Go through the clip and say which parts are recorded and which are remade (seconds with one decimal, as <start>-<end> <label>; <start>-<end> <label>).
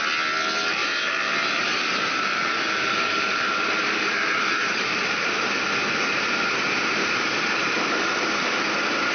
0.0-0.8 recorded; 0.8-5.5 remade; 5.5-7.0 recorded; 7.0-7.9 remade; 7.9-9.1 recorded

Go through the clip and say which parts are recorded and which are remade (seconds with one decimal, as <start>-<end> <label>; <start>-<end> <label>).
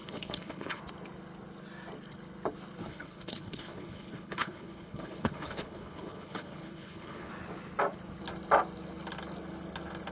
0.0-0.8 remade; 0.8-2.8 recorded; 2.8-7.3 remade; 7.3-10.1 recorded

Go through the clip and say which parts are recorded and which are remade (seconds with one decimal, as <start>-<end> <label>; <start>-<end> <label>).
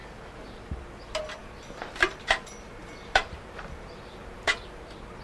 0.0-1.4 recorded; 1.4-4.5 remade; 4.5-5.2 recorded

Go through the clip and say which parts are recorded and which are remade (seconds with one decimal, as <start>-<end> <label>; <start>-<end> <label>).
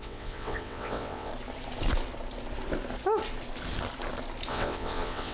0.0-1.3 remade; 1.3-4.5 recorded; 4.5-5.3 remade